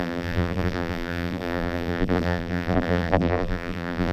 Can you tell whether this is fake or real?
fake